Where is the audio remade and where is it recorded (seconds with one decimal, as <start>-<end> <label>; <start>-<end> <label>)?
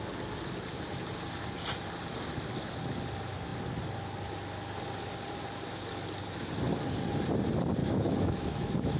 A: 0.0-7.8 recorded; 7.8-9.0 remade